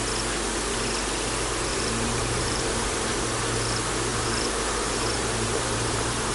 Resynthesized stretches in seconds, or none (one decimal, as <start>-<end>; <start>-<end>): 1.7-2.6; 4.1-6.3